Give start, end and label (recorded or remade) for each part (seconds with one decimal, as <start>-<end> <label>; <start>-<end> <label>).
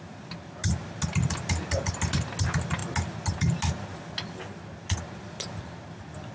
0.0-6.3 recorded